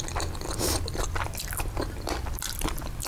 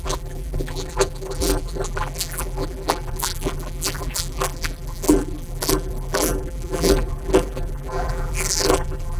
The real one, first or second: first